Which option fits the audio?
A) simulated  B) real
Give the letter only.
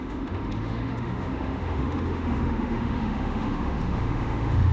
A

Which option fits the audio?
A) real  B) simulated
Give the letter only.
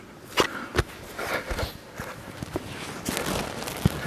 A